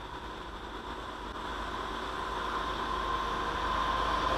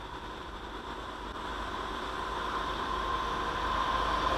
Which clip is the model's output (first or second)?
second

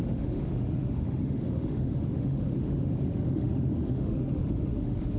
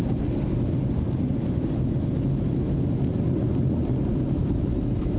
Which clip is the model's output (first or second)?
first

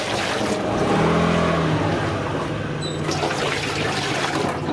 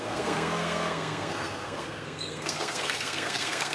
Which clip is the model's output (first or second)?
second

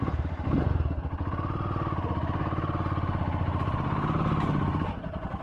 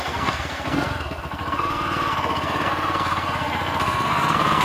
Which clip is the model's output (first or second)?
second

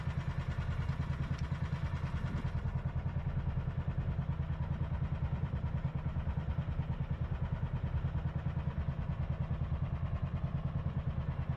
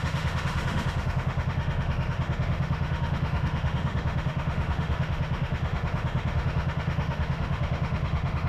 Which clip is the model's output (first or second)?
second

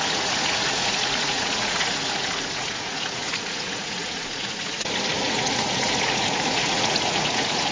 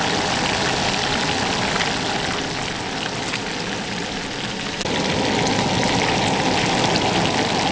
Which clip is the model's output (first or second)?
first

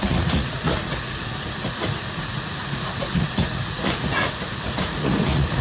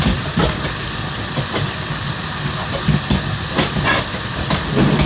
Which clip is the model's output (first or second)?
first